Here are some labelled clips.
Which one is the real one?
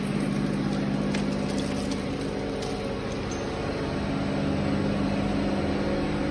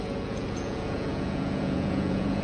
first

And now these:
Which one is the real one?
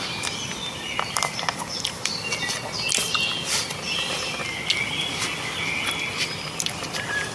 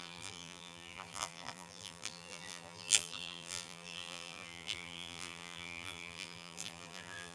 first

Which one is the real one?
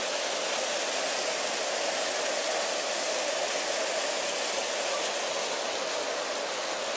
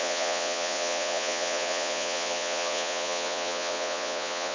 first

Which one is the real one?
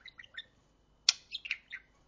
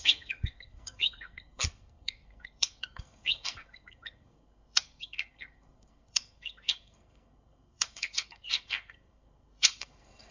first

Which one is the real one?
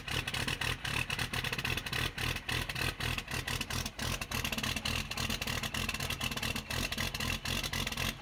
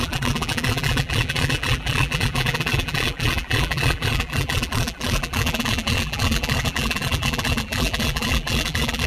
first